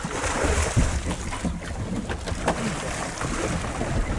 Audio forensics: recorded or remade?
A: recorded